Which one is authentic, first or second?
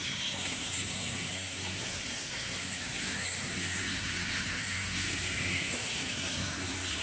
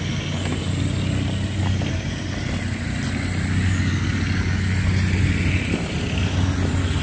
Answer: second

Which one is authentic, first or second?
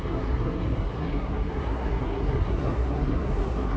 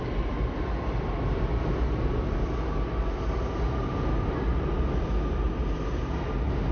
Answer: second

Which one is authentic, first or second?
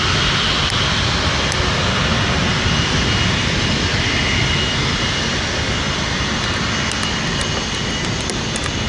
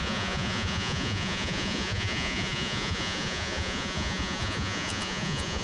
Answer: first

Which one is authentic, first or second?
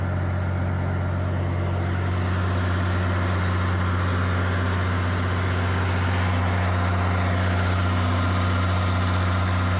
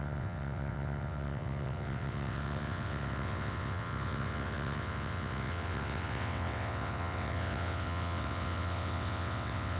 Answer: first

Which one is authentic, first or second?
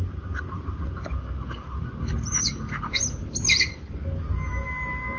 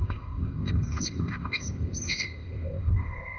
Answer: first